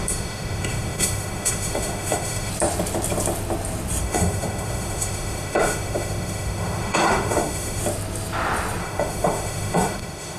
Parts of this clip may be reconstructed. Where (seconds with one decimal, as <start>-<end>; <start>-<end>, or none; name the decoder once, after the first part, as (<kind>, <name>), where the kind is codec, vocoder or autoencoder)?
0.0-2.5 (autoencoder, DAC-VAE); 4.0-7.8; 8.8-10.4